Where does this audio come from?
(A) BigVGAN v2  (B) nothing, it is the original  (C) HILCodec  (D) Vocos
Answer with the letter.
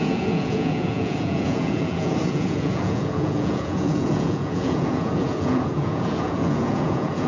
D